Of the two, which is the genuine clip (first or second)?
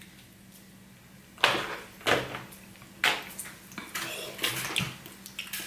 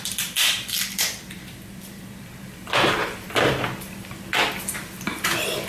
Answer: first